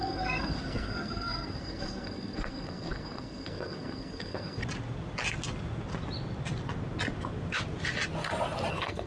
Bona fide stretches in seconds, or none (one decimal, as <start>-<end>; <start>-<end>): 4.6-8.7